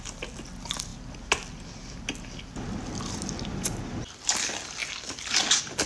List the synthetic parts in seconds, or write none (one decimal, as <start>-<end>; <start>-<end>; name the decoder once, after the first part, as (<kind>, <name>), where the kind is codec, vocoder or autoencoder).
none

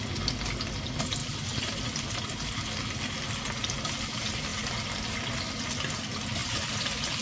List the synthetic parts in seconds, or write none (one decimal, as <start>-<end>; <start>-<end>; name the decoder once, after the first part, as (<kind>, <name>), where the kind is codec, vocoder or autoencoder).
1.2-3.4 (vocoder, BigVGAN v2)

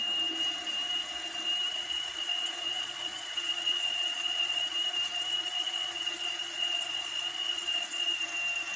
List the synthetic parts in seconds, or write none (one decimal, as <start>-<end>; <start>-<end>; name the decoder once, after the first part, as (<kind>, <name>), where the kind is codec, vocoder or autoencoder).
1.7-4.6 (vocoder, Vocos); 5.6-8.2

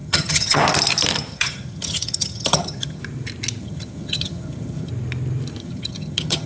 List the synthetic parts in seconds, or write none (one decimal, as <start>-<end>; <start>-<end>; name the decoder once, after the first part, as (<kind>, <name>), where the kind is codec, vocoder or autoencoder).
0.0-0.6 (vocoder, HiFi-GAN); 1.3-3.0; 3.6-4.9; 5.6-6.5